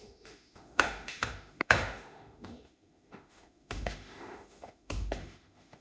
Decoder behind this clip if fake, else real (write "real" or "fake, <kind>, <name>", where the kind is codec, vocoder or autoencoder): fake, autoencoder, DAC-VAE